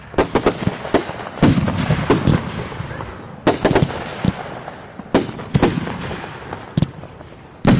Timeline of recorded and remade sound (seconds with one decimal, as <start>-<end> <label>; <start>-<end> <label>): 0.0-3.2 remade; 3.2-7.8 recorded